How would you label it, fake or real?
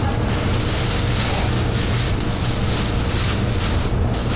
real